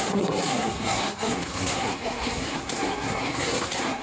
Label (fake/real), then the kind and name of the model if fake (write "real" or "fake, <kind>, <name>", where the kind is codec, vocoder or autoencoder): fake, codec, SNAC